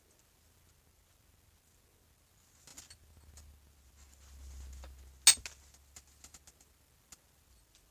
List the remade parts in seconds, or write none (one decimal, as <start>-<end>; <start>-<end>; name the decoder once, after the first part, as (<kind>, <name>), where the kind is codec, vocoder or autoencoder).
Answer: none